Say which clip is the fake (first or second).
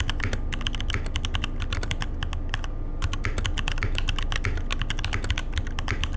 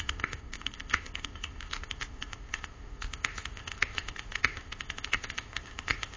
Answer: second